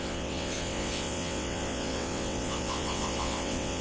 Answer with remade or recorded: remade